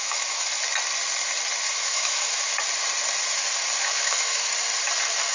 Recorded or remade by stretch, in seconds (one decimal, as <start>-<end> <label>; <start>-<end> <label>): 0.0-0.5 remade; 0.5-1.7 recorded; 1.7-2.5 remade; 2.5-3.8 recorded; 3.8-4.5 remade; 4.5-5.3 recorded